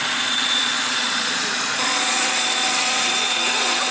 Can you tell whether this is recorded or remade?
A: remade